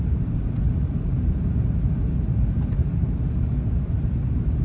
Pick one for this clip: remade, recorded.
remade